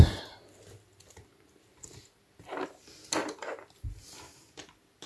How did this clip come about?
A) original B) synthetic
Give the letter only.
B